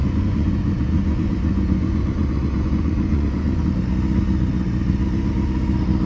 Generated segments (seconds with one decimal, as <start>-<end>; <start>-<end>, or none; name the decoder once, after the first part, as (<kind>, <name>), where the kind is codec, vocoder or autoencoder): 0.0-3.7 (vocoder, Vocos)